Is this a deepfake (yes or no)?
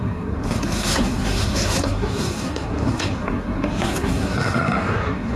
yes